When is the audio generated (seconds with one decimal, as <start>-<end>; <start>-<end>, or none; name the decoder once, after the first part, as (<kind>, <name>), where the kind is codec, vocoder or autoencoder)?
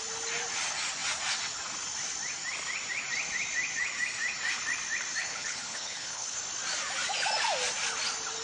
5.2-6.4 (codec, HILCodec)